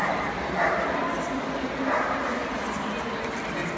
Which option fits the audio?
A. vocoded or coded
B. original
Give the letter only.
B